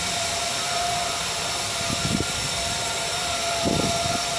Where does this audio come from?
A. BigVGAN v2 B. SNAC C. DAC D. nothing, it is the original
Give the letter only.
A